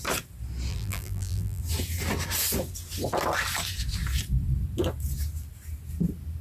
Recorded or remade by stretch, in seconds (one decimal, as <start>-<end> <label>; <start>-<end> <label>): 0.0-0.7 recorded; 0.7-1.6 remade; 1.6-6.4 recorded